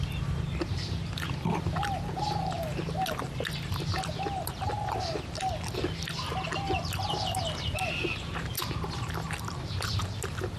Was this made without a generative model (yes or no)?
yes